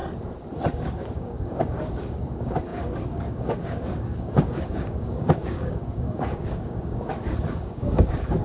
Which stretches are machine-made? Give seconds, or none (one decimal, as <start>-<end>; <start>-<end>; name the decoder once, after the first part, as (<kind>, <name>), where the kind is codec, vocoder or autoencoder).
0.7-7.1 (codec, DAC); 7.6-8.4